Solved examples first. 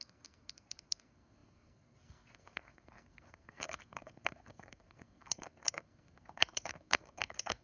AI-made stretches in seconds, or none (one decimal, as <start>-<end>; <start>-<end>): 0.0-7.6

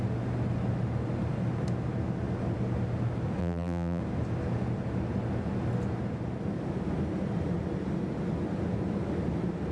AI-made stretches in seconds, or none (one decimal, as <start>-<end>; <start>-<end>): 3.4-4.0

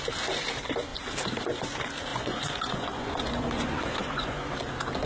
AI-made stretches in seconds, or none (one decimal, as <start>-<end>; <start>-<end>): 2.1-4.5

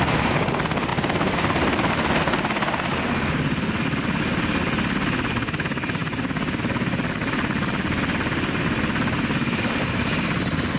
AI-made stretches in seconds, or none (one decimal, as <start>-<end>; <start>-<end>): none

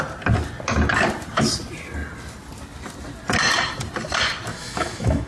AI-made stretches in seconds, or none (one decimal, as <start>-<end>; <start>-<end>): 4.5-5.3

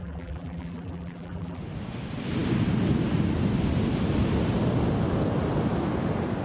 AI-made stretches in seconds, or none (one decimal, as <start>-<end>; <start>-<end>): 0.0-1.6